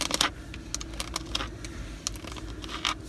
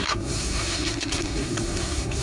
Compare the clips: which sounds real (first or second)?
first